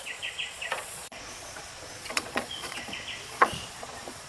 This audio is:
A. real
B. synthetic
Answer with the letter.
B